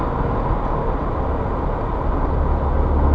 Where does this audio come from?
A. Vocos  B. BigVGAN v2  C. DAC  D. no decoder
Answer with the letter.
D